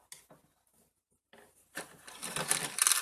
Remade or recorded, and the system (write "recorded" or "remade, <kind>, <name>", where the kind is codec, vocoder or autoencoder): recorded